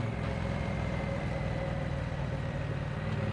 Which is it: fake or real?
real